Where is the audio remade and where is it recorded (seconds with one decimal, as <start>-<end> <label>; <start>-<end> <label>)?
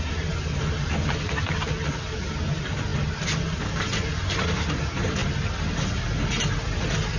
0.0-7.2 recorded